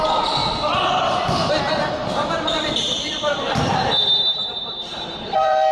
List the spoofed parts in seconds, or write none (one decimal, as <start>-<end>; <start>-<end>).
0.4-1.5; 2.0-5.7